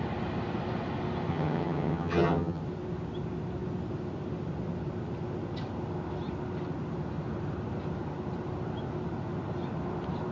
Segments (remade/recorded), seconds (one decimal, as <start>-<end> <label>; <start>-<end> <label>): 0.0-1.3 recorded; 1.3-2.6 remade; 2.6-10.3 recorded